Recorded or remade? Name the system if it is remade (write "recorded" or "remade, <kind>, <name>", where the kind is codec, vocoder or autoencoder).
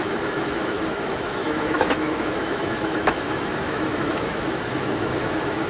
remade, autoencoder, DAC-VAE